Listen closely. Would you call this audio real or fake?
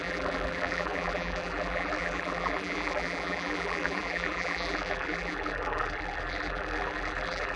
fake